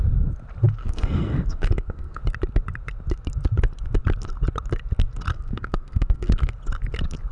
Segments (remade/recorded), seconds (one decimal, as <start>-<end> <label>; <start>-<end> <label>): 0.0-0.8 recorded; 0.8-2.2 remade; 2.2-5.3 recorded; 5.3-6.5 remade; 6.5-7.3 recorded